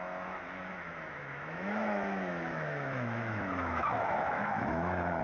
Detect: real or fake fake